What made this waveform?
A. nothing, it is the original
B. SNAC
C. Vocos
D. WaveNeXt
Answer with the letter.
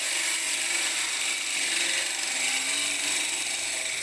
A